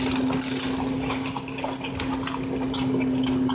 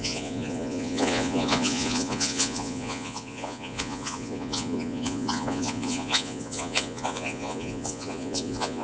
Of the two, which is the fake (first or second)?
second